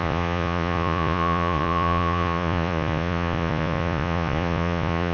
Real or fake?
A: fake